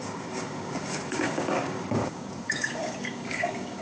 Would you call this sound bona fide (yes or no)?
no